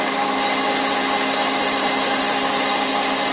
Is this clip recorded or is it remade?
recorded